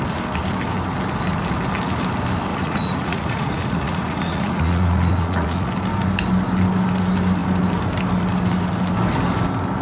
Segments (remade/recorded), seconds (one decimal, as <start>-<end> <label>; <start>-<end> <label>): 0.0-2.5 recorded; 2.5-5.7 remade; 5.7-9.8 recorded